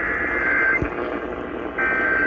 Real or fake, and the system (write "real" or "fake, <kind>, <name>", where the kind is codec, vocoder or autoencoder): real